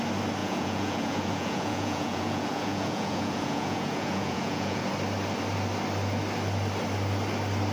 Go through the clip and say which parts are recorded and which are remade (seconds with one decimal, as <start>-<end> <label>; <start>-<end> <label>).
0.0-0.4 recorded; 0.4-4.9 remade; 4.9-7.7 recorded